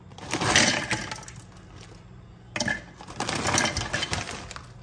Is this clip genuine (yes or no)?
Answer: yes